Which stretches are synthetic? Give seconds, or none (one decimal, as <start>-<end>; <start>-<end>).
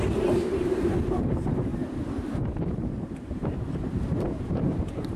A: 0.0-5.2